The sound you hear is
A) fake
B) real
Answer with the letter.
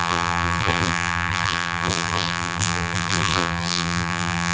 A